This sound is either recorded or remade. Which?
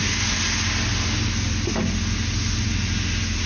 recorded